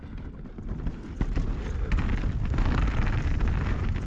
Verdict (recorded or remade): recorded